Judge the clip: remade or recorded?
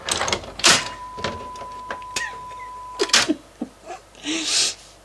recorded